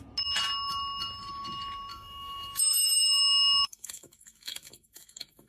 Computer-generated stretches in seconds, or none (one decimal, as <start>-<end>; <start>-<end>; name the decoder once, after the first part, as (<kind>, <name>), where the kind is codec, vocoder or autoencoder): 1.9-5.5 (autoencoder, DAC-VAE)